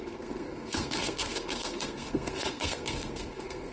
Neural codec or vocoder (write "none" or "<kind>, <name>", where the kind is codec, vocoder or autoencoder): codec, SNAC